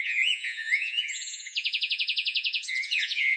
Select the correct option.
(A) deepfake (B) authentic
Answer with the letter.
A